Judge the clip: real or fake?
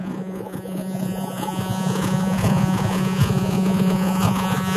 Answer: fake